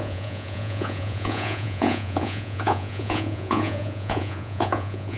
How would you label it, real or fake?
fake